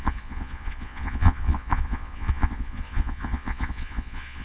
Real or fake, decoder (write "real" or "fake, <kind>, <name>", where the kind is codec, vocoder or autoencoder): fake, vocoder, Vocos